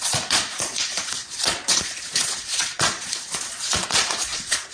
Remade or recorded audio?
remade